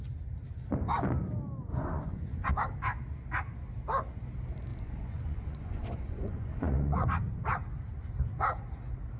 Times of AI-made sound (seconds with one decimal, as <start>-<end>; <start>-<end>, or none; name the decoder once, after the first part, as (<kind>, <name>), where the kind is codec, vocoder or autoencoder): 1.7-2.5 (vocoder, Vocos); 4.7-7.2